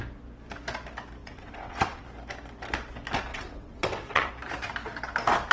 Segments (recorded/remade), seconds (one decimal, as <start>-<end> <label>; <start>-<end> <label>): 0.0-1.2 recorded; 1.2-2.0 remade; 2.0-3.3 recorded; 3.3-4.3 remade; 4.3-5.5 recorded